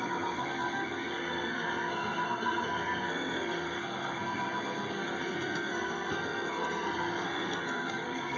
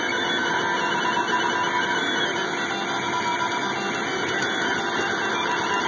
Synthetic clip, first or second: first